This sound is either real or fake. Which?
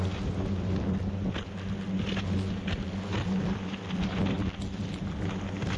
real